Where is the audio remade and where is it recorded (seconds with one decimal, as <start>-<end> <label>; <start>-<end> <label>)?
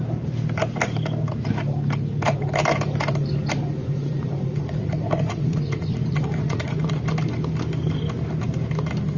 0.0-3.8 recorded; 3.8-6.9 remade; 6.9-9.2 recorded